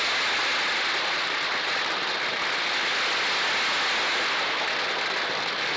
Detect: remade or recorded recorded